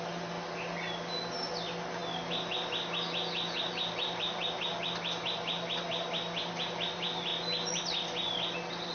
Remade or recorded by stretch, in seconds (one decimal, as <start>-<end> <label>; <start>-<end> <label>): 0.0-8.9 recorded